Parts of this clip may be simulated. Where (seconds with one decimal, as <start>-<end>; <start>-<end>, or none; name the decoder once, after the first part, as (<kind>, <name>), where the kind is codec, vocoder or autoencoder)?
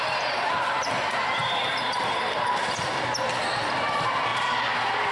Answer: 0.0-5.1 (vocoder, BigVGAN v2)